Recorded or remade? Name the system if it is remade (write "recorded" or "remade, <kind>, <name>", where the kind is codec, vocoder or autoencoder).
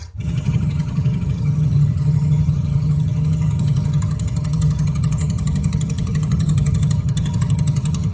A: remade, vocoder, HiFi-GAN